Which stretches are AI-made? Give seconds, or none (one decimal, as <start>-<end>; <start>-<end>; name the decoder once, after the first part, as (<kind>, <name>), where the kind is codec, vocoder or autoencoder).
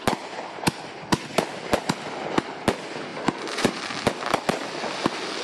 3.1-3.8 (vocoder, BigVGAN v2)